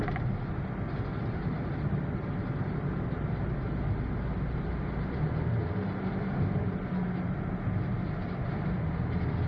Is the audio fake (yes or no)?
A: no